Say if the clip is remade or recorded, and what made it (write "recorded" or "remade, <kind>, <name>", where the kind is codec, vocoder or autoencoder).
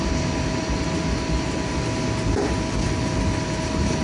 recorded